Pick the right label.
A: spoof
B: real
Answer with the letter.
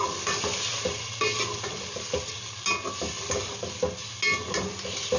B